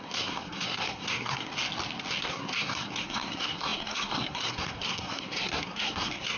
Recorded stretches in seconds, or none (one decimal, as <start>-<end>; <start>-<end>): 1.5-2.2